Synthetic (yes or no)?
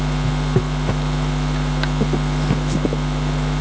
no